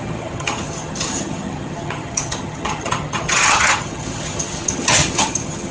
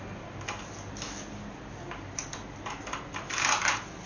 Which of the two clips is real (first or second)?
second